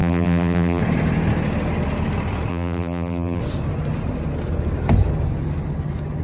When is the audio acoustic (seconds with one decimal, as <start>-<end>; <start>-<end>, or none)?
0.8-2.5; 3.4-6.2